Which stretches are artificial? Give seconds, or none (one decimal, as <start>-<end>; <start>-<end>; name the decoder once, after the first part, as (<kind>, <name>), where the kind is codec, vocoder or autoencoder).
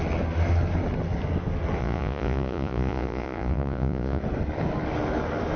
1.8-4.2 (vocoder, Vocos)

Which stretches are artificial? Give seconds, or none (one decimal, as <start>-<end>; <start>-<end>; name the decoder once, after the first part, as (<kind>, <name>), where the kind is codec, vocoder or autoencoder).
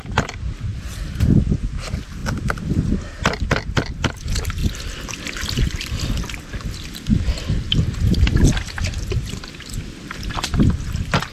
2.2-3.5 (vocoder, BigVGAN v2); 4.6-9.4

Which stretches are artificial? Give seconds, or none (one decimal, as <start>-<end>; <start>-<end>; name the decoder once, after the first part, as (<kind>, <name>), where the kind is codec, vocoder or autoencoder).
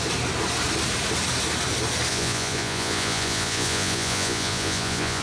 2.1-5.2 (vocoder, Vocos)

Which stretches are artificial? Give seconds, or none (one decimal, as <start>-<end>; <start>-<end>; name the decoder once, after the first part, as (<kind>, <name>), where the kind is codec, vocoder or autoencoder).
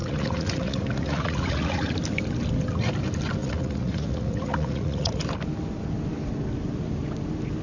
0.0-1.9 (vocoder, Vocos); 3.4-5.2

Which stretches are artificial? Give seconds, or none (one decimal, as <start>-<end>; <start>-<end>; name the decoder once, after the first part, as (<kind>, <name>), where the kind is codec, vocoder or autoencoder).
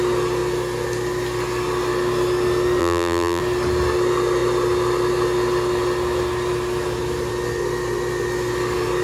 2.8-3.4 (vocoder, BigVGAN v2)